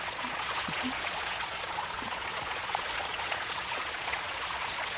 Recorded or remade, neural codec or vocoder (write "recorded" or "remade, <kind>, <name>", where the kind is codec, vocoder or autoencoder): remade, vocoder, Vocos